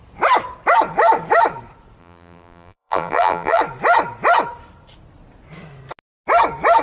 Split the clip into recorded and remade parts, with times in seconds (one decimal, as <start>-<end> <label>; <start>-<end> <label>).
0.0-2.0 recorded; 2.0-3.6 remade; 3.6-6.8 recorded